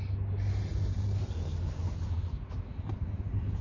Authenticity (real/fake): real